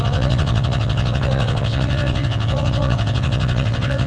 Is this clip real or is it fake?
fake